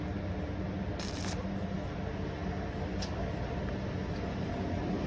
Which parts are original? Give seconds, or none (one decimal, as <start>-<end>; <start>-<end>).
0.0-5.1